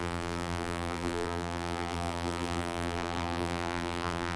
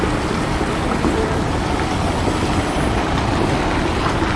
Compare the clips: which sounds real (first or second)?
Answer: second